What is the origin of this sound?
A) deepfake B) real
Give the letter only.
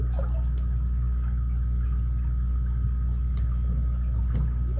B